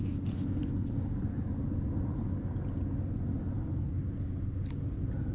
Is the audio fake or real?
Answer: real